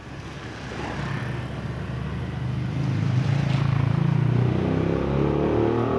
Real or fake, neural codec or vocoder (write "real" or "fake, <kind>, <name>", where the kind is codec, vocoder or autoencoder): real